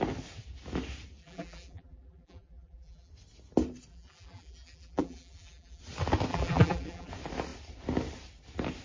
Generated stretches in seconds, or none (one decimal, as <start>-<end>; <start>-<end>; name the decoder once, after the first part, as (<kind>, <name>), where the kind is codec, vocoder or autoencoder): 1.2-3.1 (vocoder, BigVGAN v2); 3.9-5.8; 6.3-7.1